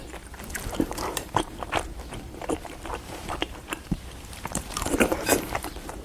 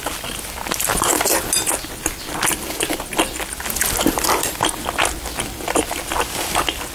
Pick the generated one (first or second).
first